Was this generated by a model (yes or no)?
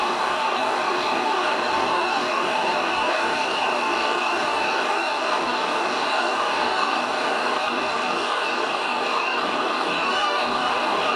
yes